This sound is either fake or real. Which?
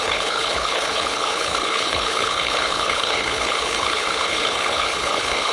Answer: fake